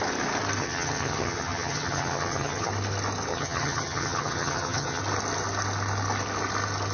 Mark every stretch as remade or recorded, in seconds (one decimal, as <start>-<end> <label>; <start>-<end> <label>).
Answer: 0.0-0.6 recorded; 0.6-2.7 remade; 2.7-3.3 recorded; 3.3-5.0 remade; 5.0-6.9 recorded

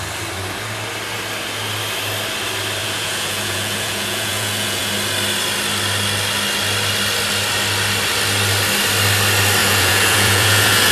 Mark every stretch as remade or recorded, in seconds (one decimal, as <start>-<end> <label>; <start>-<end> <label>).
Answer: 0.0-2.8 recorded; 2.8-4.9 remade; 4.9-9.6 recorded; 9.6-10.9 remade

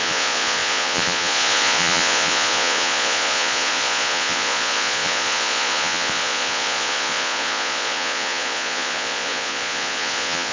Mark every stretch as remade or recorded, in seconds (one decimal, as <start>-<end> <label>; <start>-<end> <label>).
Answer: 0.0-10.5 remade

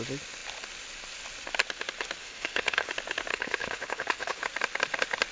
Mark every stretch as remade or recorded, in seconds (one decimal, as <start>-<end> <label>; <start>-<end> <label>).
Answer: 0.0-2.2 recorded; 2.2-2.9 remade; 2.9-3.3 recorded; 3.3-4.4 remade; 4.4-5.3 recorded

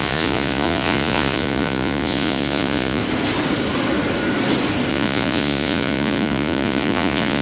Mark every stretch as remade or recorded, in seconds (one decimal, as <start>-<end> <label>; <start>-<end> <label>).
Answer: 0.0-3.0 remade; 3.0-4.9 recorded; 4.9-7.4 remade

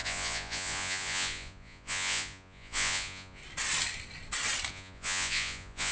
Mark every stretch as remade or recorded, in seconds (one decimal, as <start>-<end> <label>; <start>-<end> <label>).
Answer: 0.0-3.4 remade; 3.4-4.7 recorded; 4.7-5.9 remade

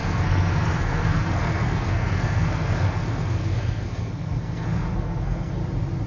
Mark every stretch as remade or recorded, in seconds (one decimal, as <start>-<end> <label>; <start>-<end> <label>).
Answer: 0.0-5.6 remade; 5.6-6.1 recorded